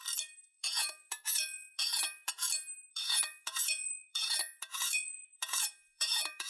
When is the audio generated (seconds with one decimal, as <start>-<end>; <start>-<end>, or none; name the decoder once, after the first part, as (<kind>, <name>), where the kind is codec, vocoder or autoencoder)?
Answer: 0.5-2.5 (vocoder, Vocos); 2.9-6.5